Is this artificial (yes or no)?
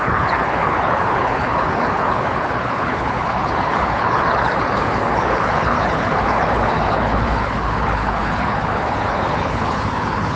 yes